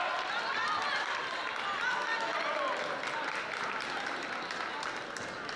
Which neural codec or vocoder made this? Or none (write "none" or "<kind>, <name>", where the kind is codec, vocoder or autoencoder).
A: none